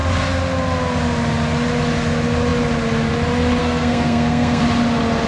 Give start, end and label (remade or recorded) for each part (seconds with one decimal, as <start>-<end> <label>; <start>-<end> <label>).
0.0-3.6 recorded; 3.6-4.6 remade; 4.6-5.3 recorded